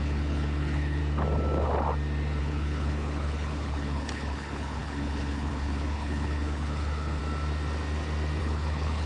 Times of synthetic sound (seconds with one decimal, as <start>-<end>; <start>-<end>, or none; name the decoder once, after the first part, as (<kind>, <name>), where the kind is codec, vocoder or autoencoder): 0.0-1.0 (codec, HILCodec); 2.4-7.2; 8.4-9.1